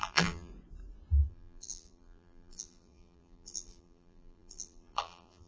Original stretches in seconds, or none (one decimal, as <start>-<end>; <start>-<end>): 0.5-1.3